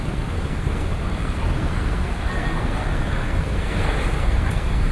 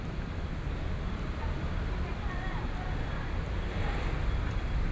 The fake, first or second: first